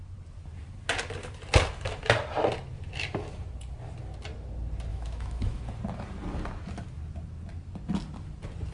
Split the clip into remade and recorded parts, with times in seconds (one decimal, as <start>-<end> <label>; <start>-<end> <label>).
0.0-4.9 recorded; 4.9-5.6 remade; 5.6-8.7 recorded